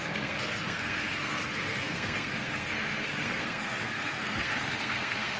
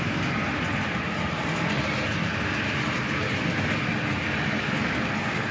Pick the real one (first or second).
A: second